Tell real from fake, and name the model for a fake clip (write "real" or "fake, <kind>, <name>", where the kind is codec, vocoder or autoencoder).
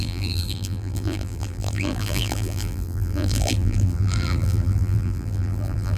fake, vocoder, BigVGAN v2